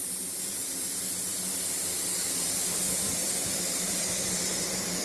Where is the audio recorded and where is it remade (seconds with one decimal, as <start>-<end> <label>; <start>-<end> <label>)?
0.0-5.0 recorded